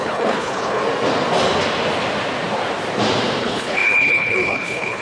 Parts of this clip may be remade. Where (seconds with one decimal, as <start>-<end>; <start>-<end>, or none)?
0.0-0.8; 3.4-5.0